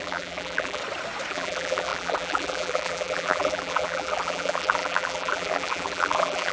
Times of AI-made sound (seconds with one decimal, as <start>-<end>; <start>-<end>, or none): 0.0-0.8; 1.3-6.5